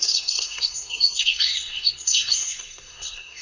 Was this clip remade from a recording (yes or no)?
yes